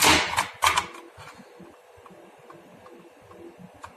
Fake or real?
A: real